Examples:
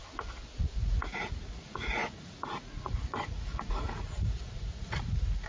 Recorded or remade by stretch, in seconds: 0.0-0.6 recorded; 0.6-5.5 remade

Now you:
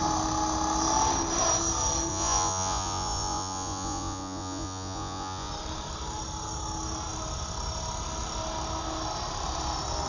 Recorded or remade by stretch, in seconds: 0.0-2.1 recorded; 2.1-5.5 remade; 5.5-10.1 recorded

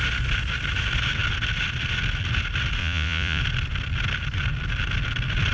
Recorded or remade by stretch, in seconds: 0.0-2.8 recorded; 2.8-3.4 remade; 3.4-5.5 recorded

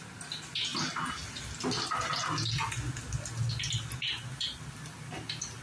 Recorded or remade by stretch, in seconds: 0.0-5.6 recorded

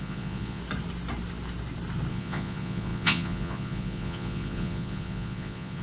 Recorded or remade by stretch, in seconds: 0.0-0.6 remade; 0.6-2.1 recorded; 2.1-5.8 remade

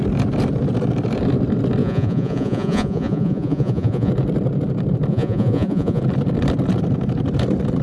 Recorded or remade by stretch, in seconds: 0.0-1.8 recorded; 1.8-4.1 remade; 4.1-5.1 recorded; 5.1-6.0 remade; 6.0-7.8 recorded

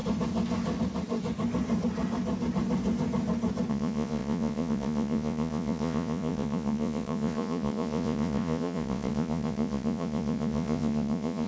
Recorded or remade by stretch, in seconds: 0.0-3.7 recorded; 3.7-11.5 remade

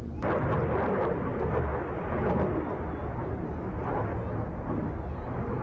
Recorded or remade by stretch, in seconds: 0.0-5.6 recorded